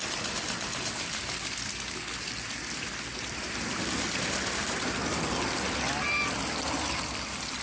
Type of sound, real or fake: real